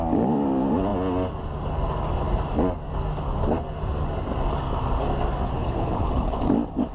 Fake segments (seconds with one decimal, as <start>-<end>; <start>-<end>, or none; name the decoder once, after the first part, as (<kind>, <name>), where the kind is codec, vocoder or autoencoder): 5.6-6.4 (codec, HILCodec)